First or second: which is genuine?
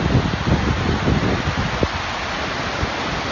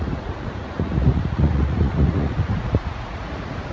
first